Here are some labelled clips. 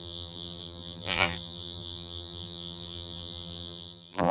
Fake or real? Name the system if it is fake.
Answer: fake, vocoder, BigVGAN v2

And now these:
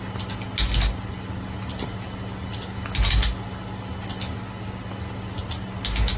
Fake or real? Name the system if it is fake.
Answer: real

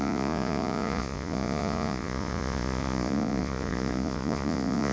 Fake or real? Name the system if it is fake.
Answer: fake, vocoder, Vocos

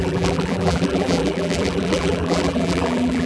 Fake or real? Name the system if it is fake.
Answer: fake, vocoder, BigVGAN v2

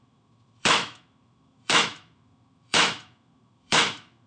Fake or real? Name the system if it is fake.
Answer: fake, autoencoder, DAC-VAE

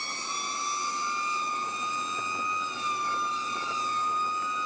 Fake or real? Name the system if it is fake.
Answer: real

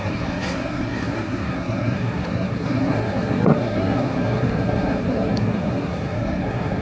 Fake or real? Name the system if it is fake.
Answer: fake, codec, SNAC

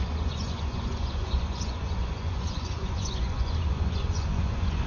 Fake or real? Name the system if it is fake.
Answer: fake, vocoder, Vocos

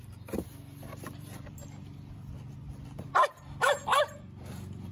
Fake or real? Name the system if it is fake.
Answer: fake, vocoder, BigVGAN v2